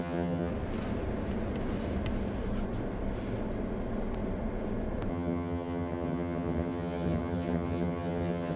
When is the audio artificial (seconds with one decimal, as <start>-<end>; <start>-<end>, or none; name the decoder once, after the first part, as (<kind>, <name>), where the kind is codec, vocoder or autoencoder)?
0.0-0.5 (vocoder, HiFi-GAN); 5.1-8.6

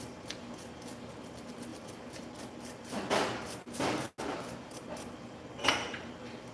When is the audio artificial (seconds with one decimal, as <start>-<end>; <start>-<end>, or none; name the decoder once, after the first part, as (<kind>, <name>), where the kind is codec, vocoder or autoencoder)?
none